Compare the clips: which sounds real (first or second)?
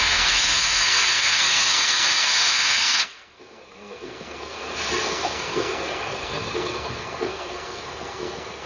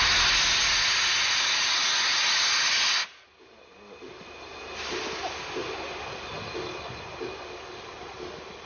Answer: second